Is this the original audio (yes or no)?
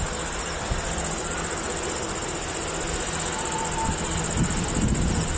yes